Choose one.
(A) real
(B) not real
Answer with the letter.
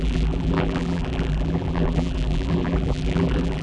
B